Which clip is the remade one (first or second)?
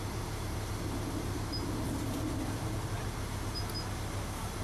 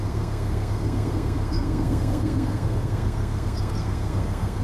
second